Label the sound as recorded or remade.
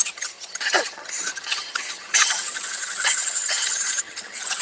remade